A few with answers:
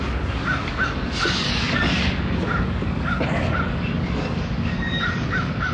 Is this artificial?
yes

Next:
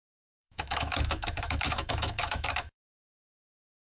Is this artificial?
yes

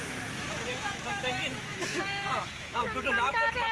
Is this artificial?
yes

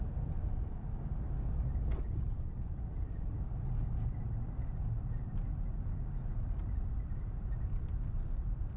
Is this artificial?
no